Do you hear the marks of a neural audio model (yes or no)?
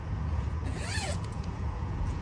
yes